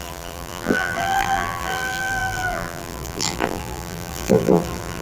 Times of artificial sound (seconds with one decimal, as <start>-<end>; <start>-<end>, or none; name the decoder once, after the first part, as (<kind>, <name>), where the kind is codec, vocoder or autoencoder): 0.0-5.0 (vocoder, BigVGAN v2)